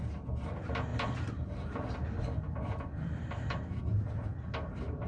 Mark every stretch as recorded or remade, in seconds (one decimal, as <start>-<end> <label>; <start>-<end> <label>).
0.0-0.9 recorded; 0.9-3.8 remade; 3.8-5.1 recorded